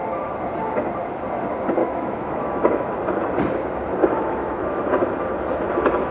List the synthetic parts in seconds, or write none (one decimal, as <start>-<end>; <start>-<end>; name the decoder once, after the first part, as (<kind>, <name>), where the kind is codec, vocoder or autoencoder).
1.8-2.9 (autoencoder, DAC-VAE); 4.0-4.9